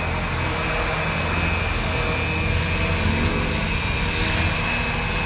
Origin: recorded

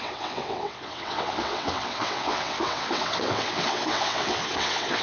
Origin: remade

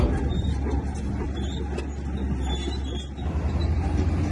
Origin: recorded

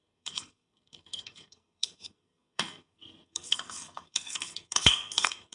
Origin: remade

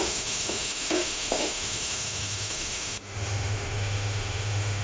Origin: remade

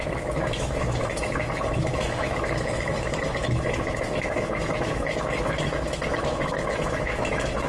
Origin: remade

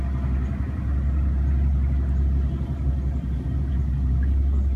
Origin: recorded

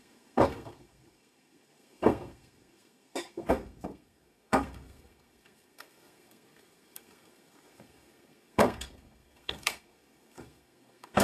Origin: remade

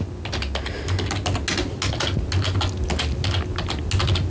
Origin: recorded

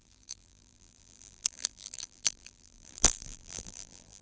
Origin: remade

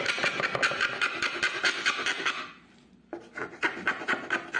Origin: recorded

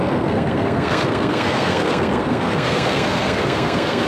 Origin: remade